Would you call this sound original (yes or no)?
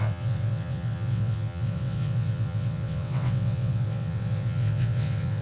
no